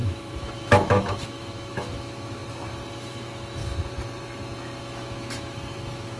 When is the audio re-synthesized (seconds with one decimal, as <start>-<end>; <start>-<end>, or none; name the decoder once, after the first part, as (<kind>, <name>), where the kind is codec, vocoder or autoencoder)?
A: 0.0-2.4 (autoencoder, DAC-VAE); 2.9-3.6; 4.8-6.2